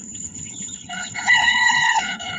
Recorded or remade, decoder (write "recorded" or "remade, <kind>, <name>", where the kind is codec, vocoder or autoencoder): remade, codec, HILCodec